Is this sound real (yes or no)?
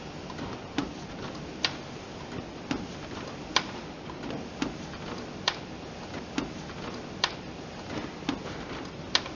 yes